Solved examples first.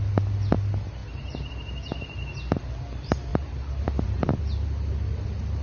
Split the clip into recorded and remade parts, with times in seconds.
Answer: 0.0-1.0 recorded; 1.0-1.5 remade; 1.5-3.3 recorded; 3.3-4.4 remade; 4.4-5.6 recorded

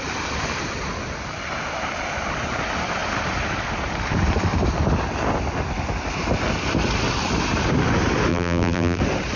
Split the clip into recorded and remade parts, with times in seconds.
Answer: 0.0-8.3 recorded; 8.3-9.0 remade; 9.0-9.4 recorded